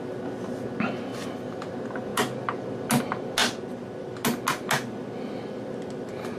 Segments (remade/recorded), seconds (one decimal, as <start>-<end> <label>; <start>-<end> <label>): 0.0-6.4 recorded